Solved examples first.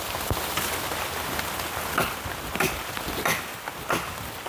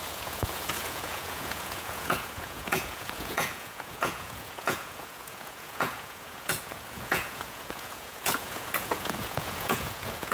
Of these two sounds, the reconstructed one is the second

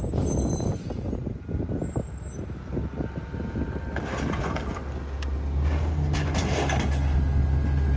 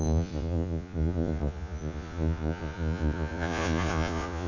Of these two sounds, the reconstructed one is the second